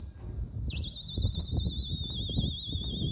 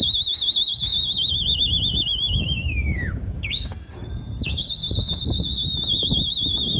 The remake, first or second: second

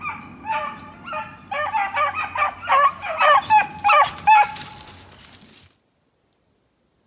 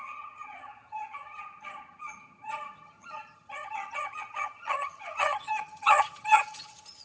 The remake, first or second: second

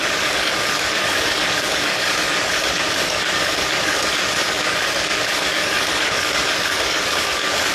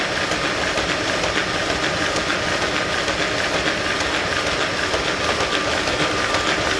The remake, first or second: first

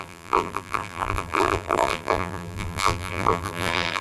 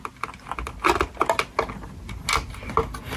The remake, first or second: first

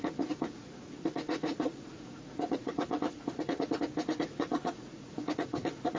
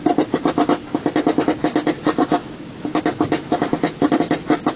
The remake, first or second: first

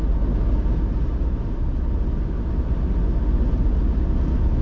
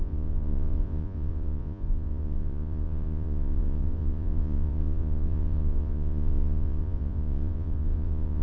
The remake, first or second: second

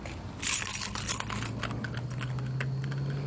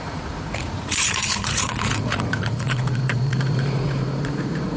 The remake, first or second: second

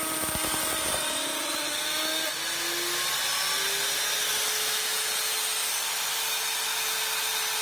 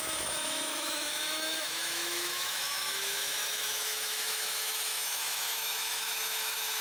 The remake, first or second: second